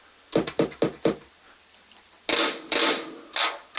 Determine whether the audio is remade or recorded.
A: recorded